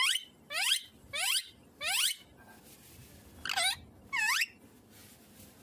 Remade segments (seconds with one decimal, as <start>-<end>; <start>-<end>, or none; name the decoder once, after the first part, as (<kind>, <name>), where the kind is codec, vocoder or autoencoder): none